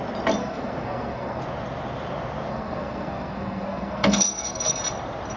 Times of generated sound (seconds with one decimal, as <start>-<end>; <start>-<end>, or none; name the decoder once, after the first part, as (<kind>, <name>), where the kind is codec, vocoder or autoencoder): 0.4-1.4 (codec, SNAC); 2.5-4.8